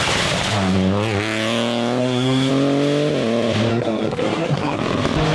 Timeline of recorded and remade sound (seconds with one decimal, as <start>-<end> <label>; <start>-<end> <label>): 0.0-2.0 recorded; 2.0-2.5 remade; 2.5-3.7 recorded; 3.7-4.8 remade; 4.8-5.3 recorded